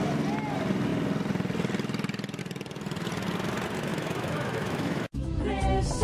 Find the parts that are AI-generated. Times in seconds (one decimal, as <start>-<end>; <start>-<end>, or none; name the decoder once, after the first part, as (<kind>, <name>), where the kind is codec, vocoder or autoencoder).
3.9-5.4 (autoencoder, DAC-VAE)